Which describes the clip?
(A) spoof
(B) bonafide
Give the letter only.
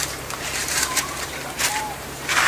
A